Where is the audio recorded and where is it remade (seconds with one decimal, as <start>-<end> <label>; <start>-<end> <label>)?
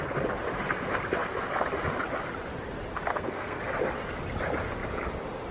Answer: 0.0-3.1 recorded; 3.1-3.6 remade; 3.6-5.5 recorded